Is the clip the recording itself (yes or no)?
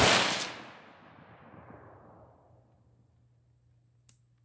yes